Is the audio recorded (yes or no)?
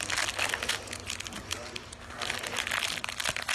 yes